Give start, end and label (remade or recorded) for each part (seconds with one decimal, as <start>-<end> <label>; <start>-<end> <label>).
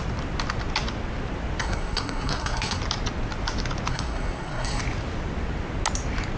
0.0-1.6 recorded; 1.6-2.8 remade; 2.8-3.9 recorded; 3.9-4.8 remade; 4.8-6.4 recorded